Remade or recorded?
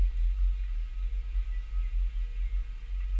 recorded